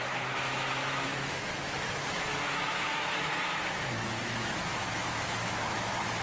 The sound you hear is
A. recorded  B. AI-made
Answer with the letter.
B